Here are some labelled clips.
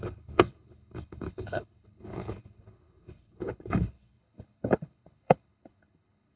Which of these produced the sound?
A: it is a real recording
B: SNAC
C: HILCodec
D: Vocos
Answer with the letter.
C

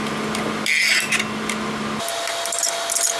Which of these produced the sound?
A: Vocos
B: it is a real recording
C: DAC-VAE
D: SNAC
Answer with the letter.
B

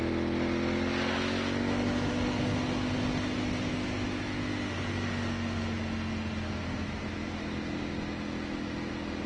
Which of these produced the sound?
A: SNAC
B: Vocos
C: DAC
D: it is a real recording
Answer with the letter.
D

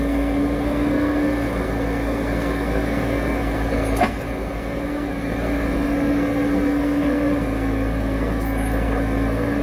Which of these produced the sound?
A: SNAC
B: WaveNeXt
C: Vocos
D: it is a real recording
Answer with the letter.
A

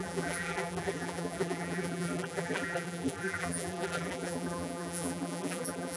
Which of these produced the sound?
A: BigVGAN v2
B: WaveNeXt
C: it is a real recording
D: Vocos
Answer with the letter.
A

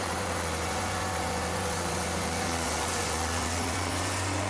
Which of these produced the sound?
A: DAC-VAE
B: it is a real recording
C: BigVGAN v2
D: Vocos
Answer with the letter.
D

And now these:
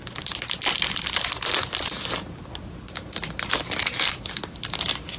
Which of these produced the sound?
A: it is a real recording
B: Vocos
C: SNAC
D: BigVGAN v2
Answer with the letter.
A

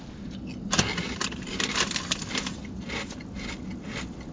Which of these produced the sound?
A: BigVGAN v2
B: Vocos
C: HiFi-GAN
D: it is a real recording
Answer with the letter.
D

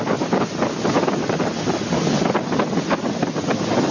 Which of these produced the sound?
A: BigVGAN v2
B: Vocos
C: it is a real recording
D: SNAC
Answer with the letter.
C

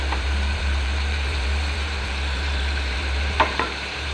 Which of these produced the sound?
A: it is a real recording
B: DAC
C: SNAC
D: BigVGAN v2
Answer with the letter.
D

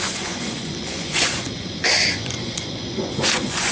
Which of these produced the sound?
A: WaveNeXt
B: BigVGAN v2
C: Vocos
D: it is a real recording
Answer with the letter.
C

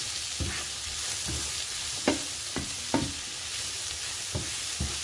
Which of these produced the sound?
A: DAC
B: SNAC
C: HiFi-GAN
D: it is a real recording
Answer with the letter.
D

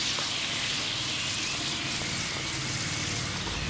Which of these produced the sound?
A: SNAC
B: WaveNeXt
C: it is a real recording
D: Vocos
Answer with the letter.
C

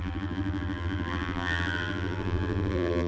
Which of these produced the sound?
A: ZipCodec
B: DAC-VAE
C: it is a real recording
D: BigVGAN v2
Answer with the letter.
D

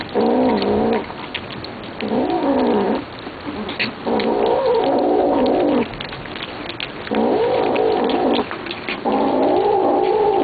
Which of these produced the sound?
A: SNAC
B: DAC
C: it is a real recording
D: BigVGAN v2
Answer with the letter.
C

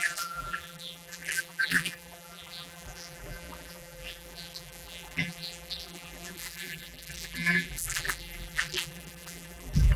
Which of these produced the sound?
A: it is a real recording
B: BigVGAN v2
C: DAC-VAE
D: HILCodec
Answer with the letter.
B